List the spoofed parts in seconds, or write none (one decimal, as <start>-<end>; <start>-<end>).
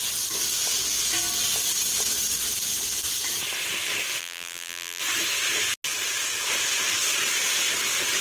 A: 4.2-5.0